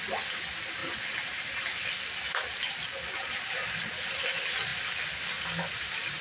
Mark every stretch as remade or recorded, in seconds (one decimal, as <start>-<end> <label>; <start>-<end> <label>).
0.0-6.2 recorded